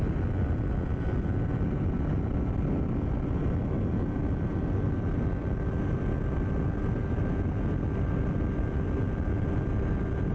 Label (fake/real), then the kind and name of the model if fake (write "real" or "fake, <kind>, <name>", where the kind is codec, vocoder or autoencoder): real